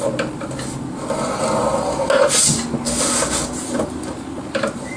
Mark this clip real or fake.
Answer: real